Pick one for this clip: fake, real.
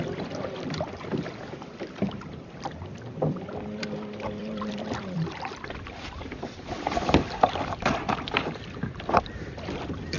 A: fake